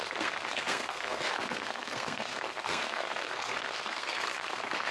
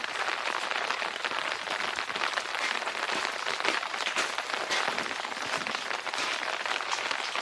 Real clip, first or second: second